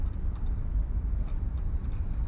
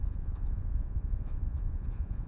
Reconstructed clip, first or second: second